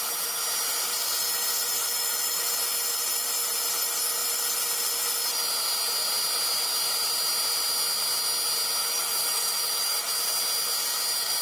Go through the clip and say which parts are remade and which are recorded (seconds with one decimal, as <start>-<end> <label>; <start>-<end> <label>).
0.0-1.8 recorded; 1.8-2.4 remade; 2.4-8.8 recorded; 8.8-10.0 remade; 10.0-11.4 recorded